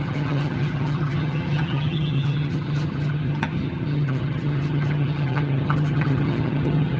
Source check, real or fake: fake